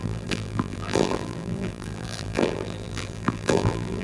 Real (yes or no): no